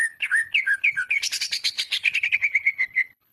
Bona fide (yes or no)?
no